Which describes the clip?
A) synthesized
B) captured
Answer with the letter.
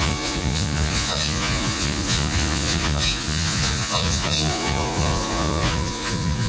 A